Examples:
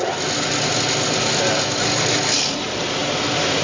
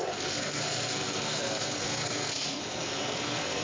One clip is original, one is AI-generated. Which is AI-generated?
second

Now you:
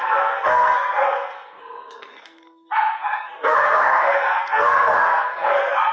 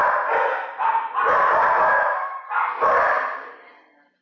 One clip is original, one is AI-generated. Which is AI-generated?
first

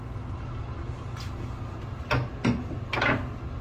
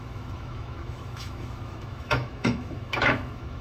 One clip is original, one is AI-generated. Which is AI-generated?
second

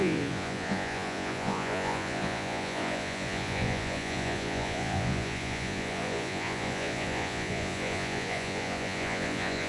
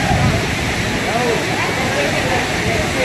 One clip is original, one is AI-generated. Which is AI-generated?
first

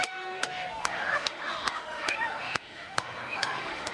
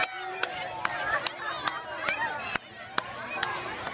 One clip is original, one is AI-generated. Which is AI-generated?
first